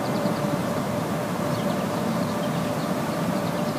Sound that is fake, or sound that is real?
fake